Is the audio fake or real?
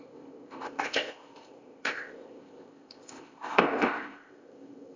fake